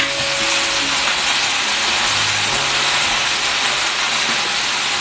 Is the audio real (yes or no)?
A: yes